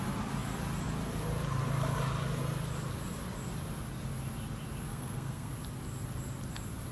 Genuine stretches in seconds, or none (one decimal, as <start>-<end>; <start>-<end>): 0.0-4.9; 5.5-6.9